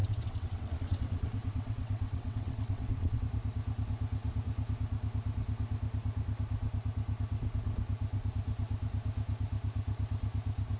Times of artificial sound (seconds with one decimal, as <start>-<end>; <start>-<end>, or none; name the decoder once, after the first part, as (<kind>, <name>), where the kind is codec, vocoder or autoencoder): 0.0-3.2 (vocoder, WaveNeXt)